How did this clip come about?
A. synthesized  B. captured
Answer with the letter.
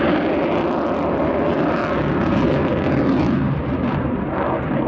B